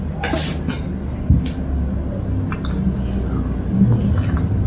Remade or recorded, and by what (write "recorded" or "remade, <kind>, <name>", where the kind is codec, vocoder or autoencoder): recorded